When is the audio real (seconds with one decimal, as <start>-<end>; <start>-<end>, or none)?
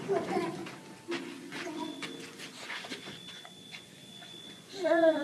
0.6-1.2